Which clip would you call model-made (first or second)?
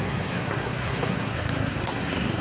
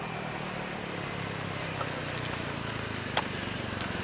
first